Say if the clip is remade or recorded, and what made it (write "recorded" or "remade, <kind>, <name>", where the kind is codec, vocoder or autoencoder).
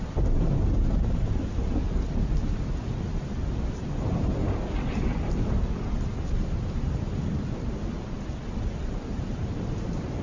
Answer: recorded